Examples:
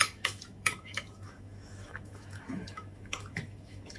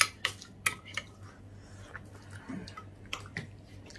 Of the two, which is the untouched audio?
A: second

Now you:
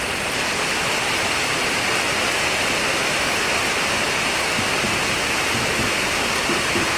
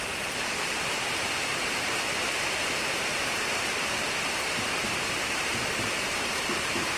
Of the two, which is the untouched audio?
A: first